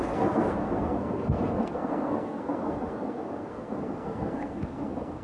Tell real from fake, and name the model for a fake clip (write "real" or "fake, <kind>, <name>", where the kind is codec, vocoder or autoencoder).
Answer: fake, codec, SNAC